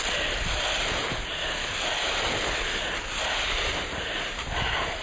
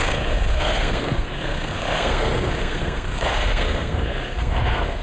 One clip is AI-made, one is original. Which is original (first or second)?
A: first